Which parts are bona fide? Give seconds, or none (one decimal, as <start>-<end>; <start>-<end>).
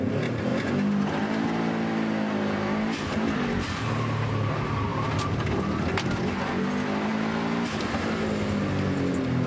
0.0-9.5